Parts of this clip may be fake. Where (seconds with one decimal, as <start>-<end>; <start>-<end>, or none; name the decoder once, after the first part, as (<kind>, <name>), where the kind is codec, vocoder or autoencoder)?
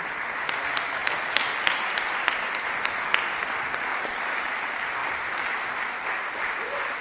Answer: none